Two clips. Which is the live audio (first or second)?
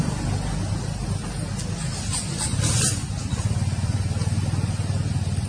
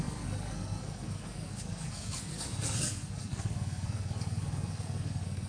first